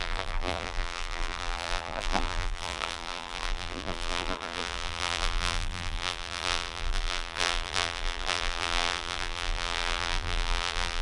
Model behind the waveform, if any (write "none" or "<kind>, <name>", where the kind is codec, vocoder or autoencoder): vocoder, BigVGAN v2